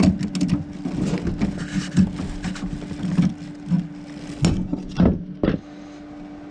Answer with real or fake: real